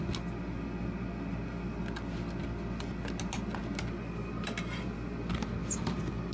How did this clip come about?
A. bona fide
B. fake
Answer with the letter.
A